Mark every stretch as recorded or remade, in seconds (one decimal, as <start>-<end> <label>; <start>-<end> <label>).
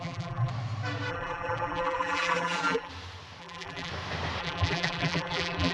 0.0-0.5 remade; 0.5-1.1 recorded; 1.1-2.9 remade; 2.9-3.4 recorded; 3.4-3.9 remade; 3.9-4.4 recorded; 4.4-5.7 remade